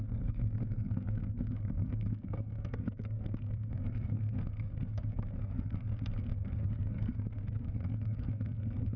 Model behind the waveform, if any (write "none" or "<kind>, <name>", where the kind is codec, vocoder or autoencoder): codec, SNAC